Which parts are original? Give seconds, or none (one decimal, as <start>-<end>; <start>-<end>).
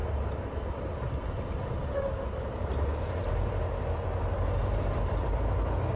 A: 0.9-6.0